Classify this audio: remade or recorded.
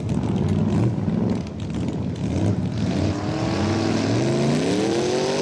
recorded